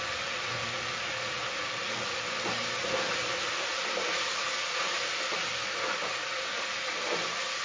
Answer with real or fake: real